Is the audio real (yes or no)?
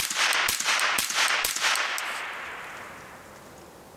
yes